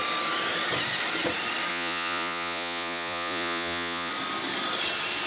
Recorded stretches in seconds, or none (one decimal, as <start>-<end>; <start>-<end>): 0.0-1.7; 4.1-5.3